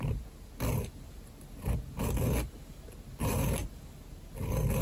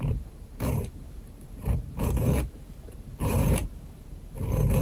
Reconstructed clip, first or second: second